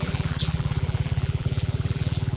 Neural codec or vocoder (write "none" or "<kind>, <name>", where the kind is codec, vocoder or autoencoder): vocoder, BigVGAN v2